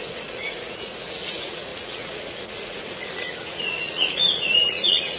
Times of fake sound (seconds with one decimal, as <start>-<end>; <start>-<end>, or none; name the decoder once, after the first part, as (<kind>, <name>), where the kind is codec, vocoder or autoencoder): 0.0-5.2 (vocoder, Vocos)